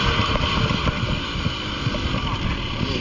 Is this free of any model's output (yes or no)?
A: yes